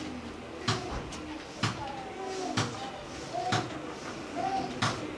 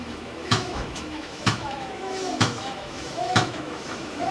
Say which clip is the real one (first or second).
first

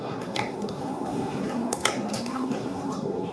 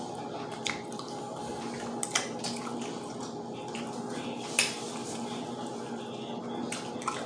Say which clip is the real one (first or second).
second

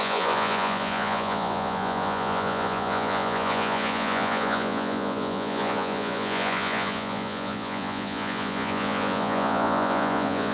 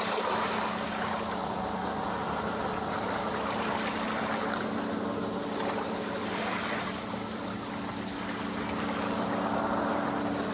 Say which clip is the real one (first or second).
second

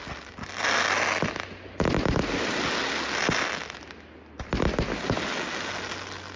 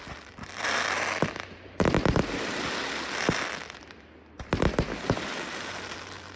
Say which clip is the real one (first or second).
first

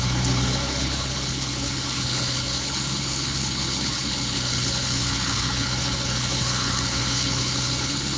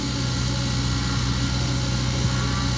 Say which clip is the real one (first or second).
second